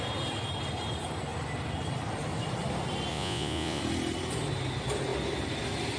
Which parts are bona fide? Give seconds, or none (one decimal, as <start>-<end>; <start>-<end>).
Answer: 0.0-3.1; 3.8-6.0